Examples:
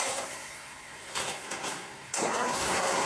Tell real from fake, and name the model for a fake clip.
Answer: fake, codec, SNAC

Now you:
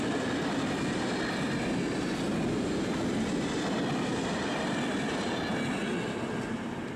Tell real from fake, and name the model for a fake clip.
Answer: real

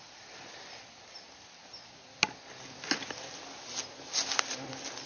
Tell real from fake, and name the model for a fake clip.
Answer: real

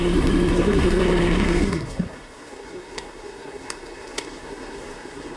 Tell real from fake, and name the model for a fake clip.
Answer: fake, codec, SNAC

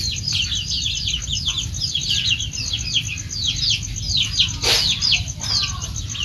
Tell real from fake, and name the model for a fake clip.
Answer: real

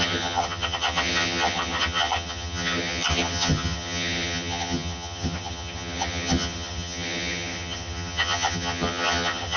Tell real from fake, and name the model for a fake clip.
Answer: fake, vocoder, HiFi-GAN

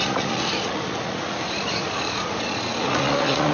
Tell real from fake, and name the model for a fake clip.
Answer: fake, vocoder, Vocos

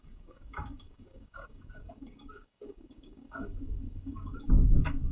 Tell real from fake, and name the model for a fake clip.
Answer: fake, codec, DAC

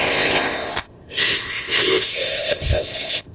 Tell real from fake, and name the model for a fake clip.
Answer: fake, codec, ZipCodec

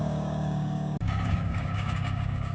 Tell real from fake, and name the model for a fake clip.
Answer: fake, codec, DAC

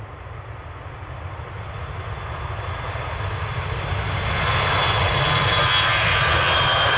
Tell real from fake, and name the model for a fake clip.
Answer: real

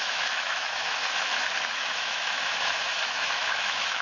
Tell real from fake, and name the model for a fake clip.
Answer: fake, autoencoder, DAC-VAE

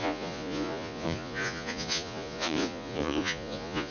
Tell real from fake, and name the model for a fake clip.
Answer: fake, vocoder, Vocos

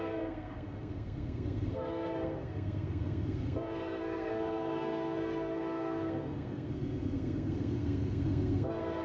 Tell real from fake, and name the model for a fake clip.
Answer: fake, codec, SNAC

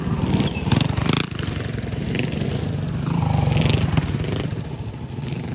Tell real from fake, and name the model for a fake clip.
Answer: real